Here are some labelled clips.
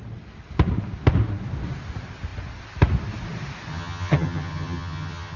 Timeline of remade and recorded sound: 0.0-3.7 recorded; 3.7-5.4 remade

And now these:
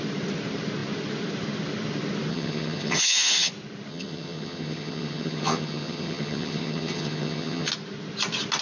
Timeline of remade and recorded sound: 0.0-2.3 recorded; 2.3-3.5 remade; 3.5-3.9 recorded; 3.9-7.7 remade; 7.7-8.6 recorded

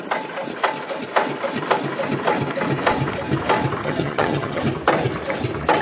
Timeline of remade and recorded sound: 0.0-3.8 recorded; 3.8-4.6 remade; 4.6-5.8 recorded

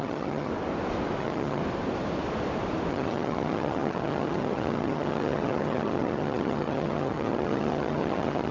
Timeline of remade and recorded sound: 0.0-0.5 remade; 0.5-1.2 recorded; 1.2-1.6 remade; 1.6-2.9 recorded; 2.9-8.5 remade

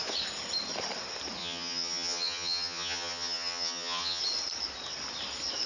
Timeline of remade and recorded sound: 0.0-1.4 recorded; 1.4-4.2 remade; 4.2-5.7 recorded

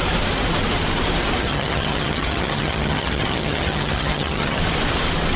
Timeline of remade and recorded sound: 0.0-1.4 recorded; 1.4-4.6 remade; 4.6-5.4 recorded

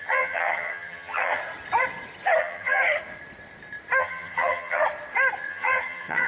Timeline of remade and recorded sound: 0.0-1.4 remade; 1.4-2.4 recorded; 2.4-2.8 remade; 2.8-4.0 recorded; 4.0-4.8 remade; 4.8-5.5 recorded; 5.5-6.3 remade